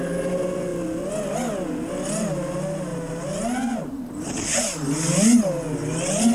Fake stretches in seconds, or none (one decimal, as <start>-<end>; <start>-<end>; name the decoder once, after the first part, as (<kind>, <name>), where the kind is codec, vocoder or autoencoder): 2.9-3.9 (vocoder, BigVGAN v2)

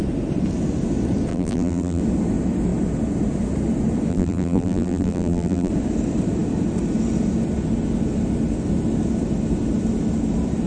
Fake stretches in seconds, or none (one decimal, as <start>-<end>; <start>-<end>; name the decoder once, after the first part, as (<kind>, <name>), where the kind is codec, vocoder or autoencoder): 1.3-2.0 (vocoder, BigVGAN v2); 4.1-5.7